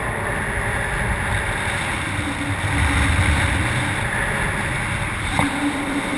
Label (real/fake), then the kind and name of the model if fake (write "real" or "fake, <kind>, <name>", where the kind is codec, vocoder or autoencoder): real